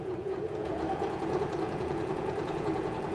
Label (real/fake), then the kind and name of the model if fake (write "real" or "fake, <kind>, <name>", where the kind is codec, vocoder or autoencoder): fake, vocoder, Vocos